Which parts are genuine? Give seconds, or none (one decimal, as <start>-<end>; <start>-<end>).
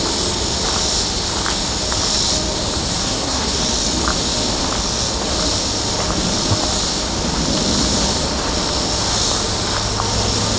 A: 0.0-3.0; 3.6-10.6